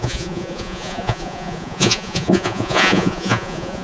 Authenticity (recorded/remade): remade